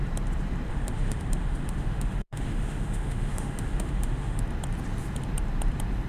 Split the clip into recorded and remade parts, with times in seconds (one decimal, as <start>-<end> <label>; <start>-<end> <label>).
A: 0.0-0.7 recorded; 0.7-4.4 remade; 4.4-6.1 recorded